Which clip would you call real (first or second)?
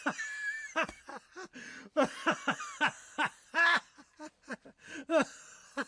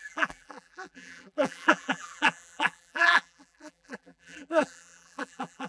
first